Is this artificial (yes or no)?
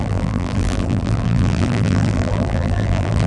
yes